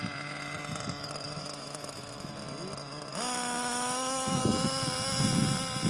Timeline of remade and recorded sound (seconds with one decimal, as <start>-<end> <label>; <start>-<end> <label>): 0.0-1.4 recorded; 1.4-2.3 remade; 2.3-3.1 recorded; 3.1-4.4 remade; 4.4-5.9 recorded